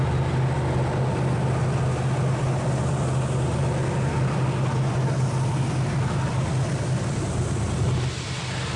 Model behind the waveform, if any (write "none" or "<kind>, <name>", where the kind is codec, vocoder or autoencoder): none